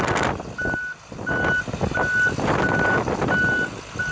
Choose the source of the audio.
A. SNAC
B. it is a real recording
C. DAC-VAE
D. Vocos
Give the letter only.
B